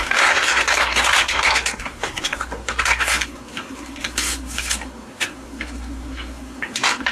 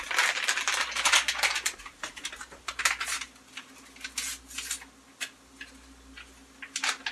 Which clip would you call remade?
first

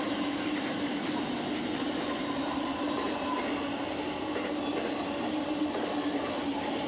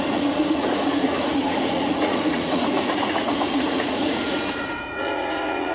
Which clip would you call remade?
second